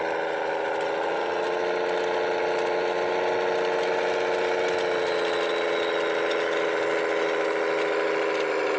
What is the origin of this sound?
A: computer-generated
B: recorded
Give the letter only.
B